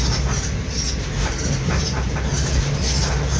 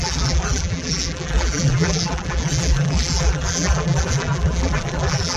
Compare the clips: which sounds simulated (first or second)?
second